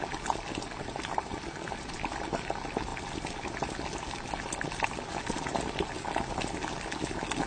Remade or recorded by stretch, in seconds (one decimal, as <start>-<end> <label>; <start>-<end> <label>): 0.0-7.5 recorded